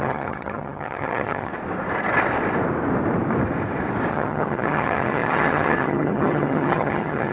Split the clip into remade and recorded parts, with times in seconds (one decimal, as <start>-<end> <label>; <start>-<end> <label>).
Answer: 0.0-1.5 remade; 1.5-4.1 recorded; 4.1-7.3 remade